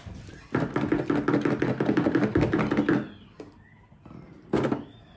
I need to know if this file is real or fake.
real